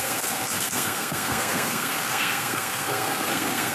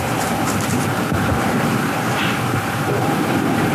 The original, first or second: second